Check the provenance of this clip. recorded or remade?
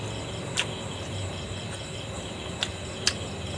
recorded